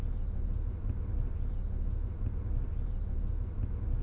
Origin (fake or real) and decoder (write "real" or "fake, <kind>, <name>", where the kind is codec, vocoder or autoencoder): real